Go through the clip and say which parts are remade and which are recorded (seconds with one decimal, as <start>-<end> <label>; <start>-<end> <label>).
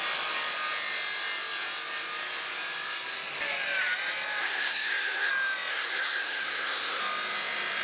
0.0-4.4 recorded; 4.4-5.3 remade; 5.3-5.7 recorded; 5.7-7.0 remade; 7.0-7.8 recorded